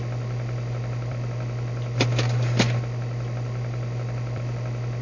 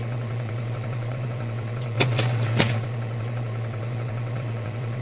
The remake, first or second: second